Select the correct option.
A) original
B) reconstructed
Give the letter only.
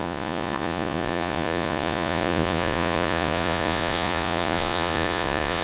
B